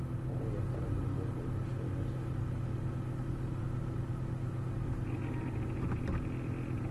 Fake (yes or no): no